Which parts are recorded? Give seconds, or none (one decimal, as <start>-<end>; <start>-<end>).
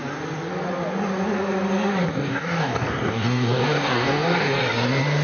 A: 0.0-2.1; 4.6-5.2